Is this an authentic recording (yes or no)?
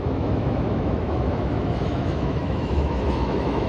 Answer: no